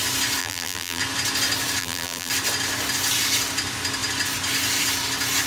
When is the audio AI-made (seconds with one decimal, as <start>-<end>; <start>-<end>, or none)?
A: 0.4-1.0; 1.8-2.3

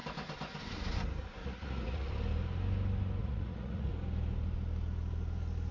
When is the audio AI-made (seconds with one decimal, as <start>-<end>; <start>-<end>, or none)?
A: 1.4-2.1; 3.2-3.9